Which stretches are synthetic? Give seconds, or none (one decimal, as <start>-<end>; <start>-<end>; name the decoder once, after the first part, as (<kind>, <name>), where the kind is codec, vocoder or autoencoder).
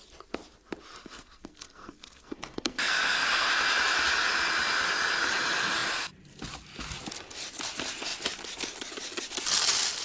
1.0-3.5 (codec, SNAC)